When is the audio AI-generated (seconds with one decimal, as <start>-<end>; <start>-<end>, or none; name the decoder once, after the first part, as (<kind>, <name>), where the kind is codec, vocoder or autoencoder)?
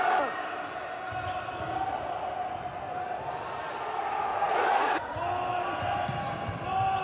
4.3-5.0 (vocoder, Vocos)